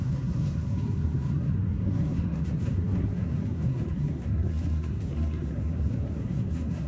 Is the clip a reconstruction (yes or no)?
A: yes